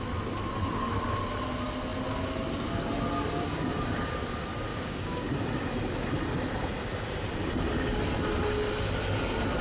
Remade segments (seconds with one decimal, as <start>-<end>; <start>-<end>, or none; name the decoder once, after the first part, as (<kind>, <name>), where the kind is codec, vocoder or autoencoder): 4.7-5.3 (codec, DAC)